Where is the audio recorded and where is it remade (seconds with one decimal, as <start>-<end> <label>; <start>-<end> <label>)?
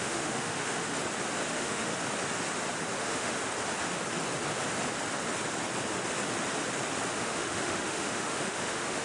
0.0-0.9 remade; 0.9-1.5 recorded; 1.5-1.9 remade; 1.9-3.0 recorded; 3.0-3.4 remade; 3.4-7.2 recorded; 7.2-9.0 remade